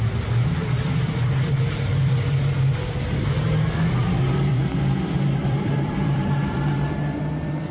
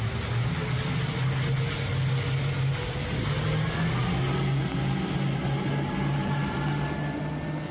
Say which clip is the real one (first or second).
second